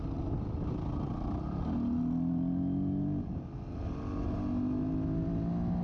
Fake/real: real